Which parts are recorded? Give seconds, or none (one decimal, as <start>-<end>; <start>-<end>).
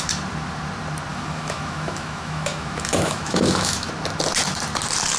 0.0-1.1; 3.9-5.2